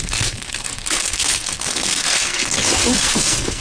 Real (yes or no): no